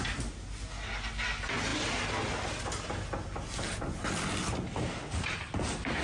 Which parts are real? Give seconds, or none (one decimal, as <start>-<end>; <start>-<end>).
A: 0.0-6.0